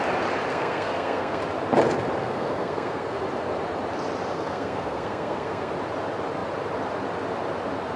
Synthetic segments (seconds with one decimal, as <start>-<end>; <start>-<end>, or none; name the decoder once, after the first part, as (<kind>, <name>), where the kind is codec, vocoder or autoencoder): 0.5-1.4 (codec, SNAC); 2.2-3.2; 4.3-5.7